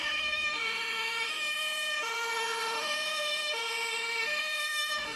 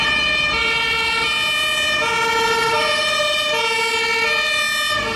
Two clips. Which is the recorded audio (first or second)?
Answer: second